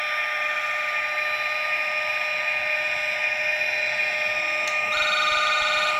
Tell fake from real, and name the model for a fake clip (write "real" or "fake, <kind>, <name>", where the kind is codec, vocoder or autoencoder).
real